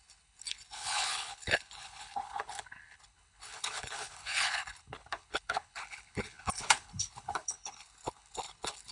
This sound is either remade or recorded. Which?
remade